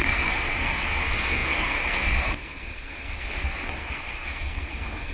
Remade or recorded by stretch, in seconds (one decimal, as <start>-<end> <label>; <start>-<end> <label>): 0.0-5.1 remade